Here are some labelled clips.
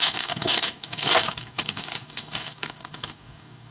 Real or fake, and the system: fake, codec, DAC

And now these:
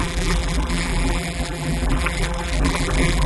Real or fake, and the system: fake, vocoder, BigVGAN v2